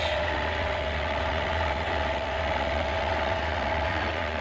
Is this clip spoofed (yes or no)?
yes